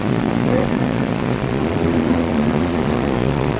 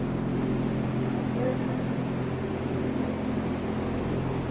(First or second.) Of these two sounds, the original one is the second